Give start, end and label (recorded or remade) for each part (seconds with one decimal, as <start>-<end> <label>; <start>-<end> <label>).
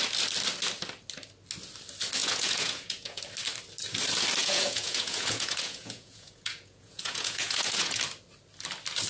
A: 0.0-2.2 recorded; 2.2-3.2 remade; 3.2-4.4 recorded; 4.4-8.0 remade; 8.0-9.1 recorded